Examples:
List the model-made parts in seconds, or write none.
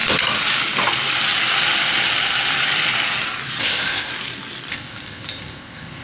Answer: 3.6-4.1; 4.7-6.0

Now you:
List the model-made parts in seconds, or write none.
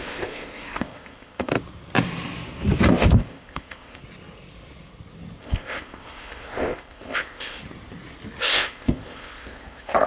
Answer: 0.0-1.5; 2.9-4.0; 5.4-7.6; 8.4-10.1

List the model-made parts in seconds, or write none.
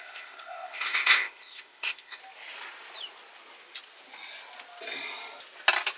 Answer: 0.0-2.2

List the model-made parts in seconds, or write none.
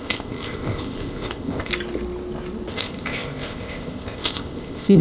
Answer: 0.0-1.7; 2.7-5.0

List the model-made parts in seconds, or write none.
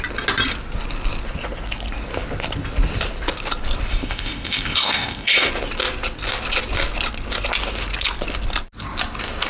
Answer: 3.9-5.5